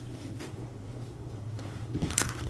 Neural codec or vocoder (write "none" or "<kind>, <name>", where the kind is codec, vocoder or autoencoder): codec, SNAC